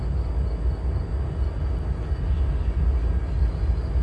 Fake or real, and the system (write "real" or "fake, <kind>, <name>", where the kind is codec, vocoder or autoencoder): real